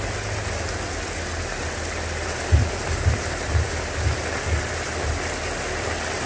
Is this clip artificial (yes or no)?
no